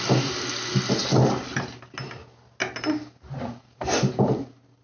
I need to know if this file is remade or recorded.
recorded